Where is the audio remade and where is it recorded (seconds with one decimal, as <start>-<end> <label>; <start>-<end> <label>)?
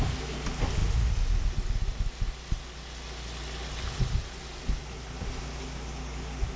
0.0-6.6 recorded